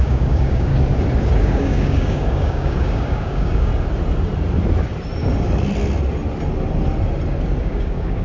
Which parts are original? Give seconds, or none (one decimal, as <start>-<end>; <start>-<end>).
0.7-1.4; 3.7-7.6